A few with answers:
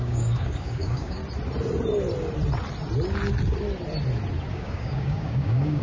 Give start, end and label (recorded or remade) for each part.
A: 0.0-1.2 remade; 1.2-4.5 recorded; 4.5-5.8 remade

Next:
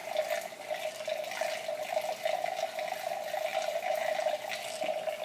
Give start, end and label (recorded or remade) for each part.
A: 0.0-3.5 recorded; 3.5-4.1 remade; 4.1-5.2 recorded

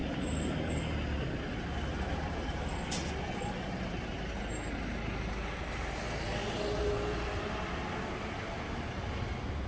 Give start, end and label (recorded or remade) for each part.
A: 0.0-9.7 recorded

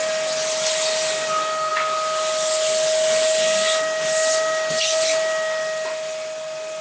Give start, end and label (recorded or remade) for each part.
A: 0.0-6.8 recorded

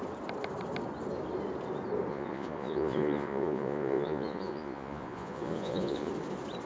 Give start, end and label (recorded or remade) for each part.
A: 0.0-2.1 recorded; 2.1-6.1 remade; 6.1-6.7 recorded

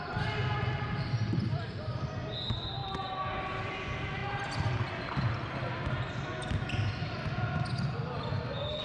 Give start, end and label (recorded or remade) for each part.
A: 0.0-8.8 recorded

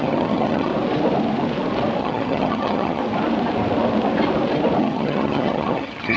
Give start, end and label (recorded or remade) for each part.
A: 0.0-0.7 remade; 0.7-2.0 recorded; 2.0-3.0 remade; 3.0-4.8 recorded; 4.8-6.2 remade

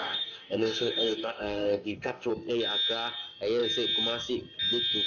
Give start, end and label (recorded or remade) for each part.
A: 0.0-2.3 remade; 2.3-5.1 recorded